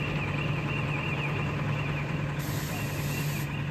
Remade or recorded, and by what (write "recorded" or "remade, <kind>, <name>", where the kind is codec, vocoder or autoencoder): recorded